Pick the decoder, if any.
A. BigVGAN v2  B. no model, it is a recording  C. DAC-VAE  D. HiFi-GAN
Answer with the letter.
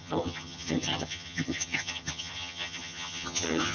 D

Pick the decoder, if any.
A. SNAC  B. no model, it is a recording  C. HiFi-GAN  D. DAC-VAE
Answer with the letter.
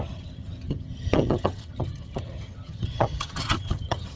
C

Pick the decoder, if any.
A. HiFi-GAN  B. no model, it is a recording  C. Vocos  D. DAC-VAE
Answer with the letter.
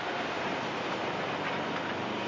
B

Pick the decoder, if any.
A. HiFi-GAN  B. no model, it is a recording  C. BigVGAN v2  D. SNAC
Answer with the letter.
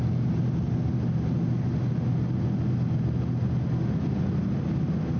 B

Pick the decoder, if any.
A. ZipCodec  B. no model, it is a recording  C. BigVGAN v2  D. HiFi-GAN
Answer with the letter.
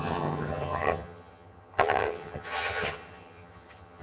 D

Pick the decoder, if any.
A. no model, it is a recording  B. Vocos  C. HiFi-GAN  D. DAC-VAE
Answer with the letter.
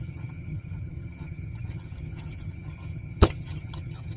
C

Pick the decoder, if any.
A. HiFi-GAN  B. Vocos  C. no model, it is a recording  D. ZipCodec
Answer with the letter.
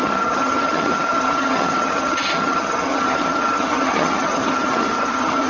A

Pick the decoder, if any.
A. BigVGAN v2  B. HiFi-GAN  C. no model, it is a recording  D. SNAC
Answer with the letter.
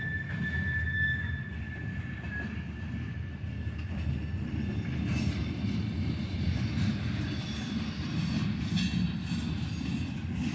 C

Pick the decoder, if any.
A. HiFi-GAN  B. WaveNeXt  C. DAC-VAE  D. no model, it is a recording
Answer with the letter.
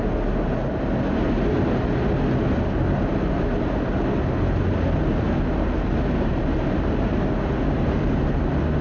D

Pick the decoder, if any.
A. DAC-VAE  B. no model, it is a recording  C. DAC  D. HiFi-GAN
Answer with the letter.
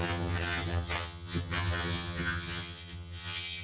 D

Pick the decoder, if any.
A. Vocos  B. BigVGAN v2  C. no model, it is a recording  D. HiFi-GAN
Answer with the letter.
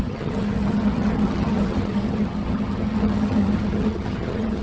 D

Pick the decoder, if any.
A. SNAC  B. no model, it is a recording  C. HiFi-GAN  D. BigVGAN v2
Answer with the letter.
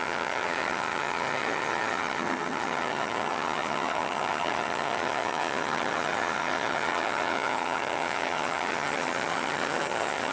C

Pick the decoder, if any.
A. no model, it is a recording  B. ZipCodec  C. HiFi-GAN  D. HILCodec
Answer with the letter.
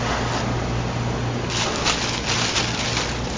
A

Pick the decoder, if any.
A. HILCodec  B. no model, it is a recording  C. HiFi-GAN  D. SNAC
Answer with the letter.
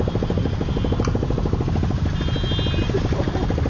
B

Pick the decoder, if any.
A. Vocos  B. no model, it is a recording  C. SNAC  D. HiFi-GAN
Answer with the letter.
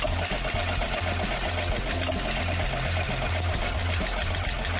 B